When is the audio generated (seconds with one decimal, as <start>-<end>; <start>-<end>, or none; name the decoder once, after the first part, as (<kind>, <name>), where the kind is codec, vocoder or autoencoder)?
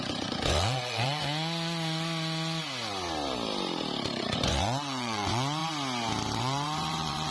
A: 0.0-1.2 (vocoder, Vocos); 4.2-5.6; 6.4-7.3